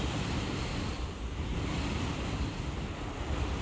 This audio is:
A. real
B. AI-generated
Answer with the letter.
A